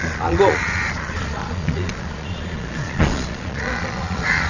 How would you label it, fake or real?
fake